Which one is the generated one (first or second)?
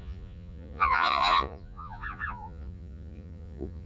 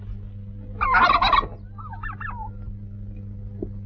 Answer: first